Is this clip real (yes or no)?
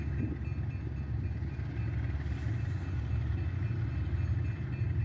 yes